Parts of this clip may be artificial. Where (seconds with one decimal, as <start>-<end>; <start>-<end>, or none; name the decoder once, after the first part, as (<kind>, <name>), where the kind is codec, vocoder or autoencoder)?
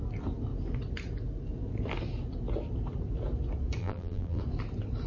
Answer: 3.8-4.4 (vocoder, BigVGAN v2)